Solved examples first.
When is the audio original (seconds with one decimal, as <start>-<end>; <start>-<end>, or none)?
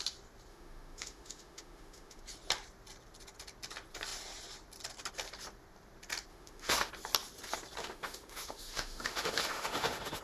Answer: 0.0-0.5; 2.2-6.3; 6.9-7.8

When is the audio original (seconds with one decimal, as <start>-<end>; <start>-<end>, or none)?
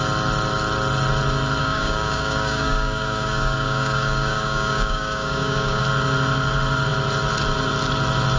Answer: 0.0-1.6; 5.8-8.4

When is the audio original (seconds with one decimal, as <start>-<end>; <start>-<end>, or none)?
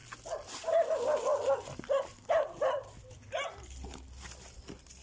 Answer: 0.0-5.0